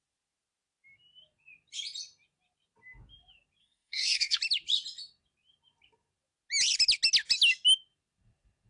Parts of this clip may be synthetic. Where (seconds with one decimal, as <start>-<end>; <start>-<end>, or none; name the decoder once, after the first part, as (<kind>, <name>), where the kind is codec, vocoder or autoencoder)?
3.6-4.4 (codec, SNAC)